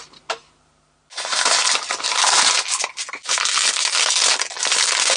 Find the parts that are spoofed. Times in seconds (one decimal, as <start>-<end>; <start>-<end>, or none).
none